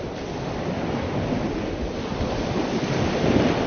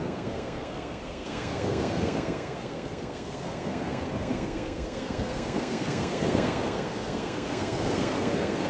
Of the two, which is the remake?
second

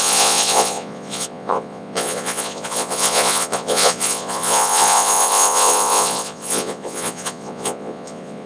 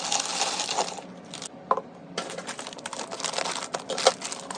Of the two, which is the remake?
first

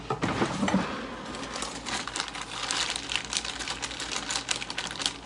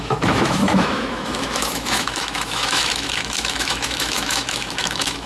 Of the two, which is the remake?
second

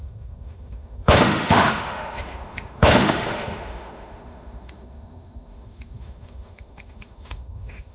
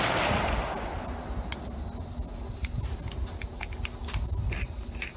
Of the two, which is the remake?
first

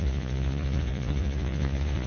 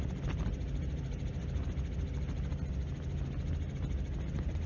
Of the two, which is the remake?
first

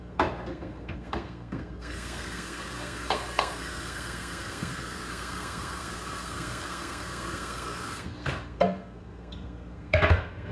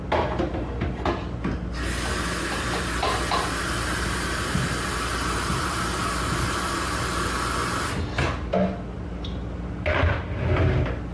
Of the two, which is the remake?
first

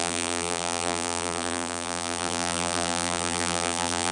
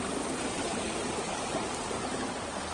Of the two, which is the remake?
first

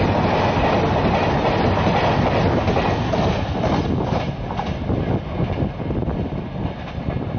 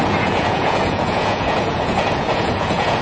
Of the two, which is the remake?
second